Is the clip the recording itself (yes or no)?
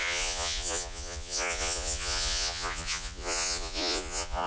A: no